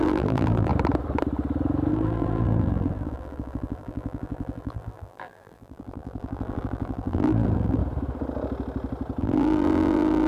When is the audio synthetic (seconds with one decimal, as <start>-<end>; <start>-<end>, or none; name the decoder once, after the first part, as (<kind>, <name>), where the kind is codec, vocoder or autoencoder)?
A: 0.0-0.7 (vocoder, BigVGAN v2); 1.9-7.8; 9.2-10.3